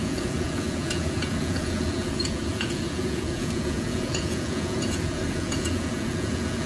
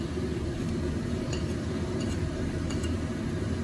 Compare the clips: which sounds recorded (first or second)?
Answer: second